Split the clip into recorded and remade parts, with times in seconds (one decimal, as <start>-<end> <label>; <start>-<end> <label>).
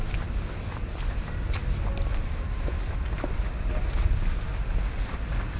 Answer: 0.0-5.6 recorded